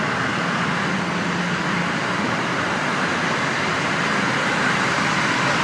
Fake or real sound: real